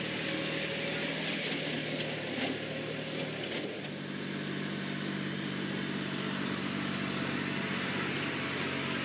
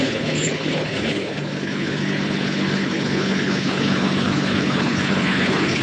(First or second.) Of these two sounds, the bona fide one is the first